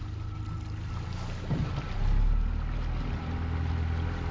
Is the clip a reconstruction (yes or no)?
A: no